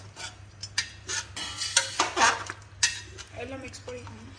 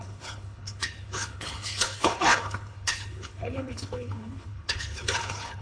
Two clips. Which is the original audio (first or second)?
first